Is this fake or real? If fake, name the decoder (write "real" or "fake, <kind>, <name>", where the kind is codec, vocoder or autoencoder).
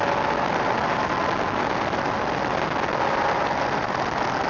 real